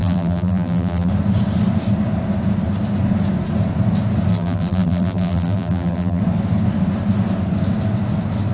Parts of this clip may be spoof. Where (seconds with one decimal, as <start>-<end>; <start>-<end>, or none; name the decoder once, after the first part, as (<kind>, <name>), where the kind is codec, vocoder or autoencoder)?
0.0-1.1 (vocoder, BigVGAN v2); 4.3-6.2